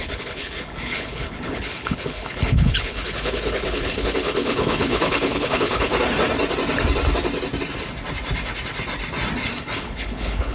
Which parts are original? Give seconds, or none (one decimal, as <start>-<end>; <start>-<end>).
5.9-9.6